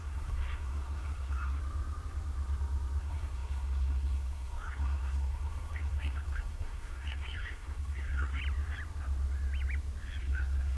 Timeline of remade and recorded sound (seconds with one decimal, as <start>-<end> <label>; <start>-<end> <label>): 0.0-1.6 remade; 1.6-3.0 recorded; 3.0-8.4 remade; 8.4-10.2 recorded; 10.2-10.8 remade